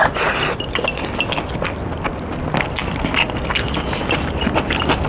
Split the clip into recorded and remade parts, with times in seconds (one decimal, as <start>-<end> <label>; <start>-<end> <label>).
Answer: 0.0-5.1 recorded